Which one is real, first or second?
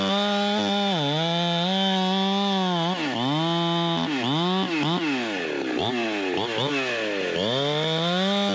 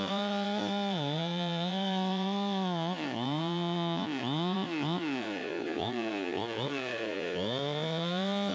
first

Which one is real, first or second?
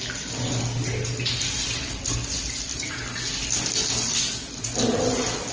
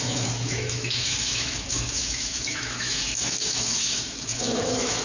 first